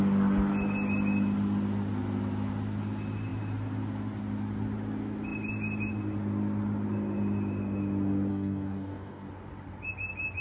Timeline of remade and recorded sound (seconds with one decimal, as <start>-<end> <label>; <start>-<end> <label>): 0.0-8.3 recorded; 8.3-9.3 remade; 9.3-10.4 recorded

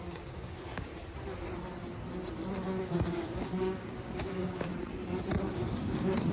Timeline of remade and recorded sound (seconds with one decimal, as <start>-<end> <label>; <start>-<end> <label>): 0.0-0.9 remade; 0.9-2.8 recorded; 2.8-4.7 remade; 4.7-5.4 recorded; 5.4-6.3 remade